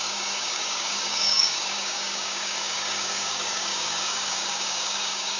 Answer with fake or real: fake